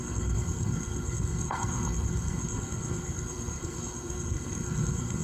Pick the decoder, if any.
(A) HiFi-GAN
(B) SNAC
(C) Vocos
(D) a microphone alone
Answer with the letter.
B